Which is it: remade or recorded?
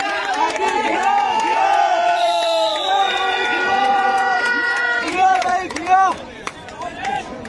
remade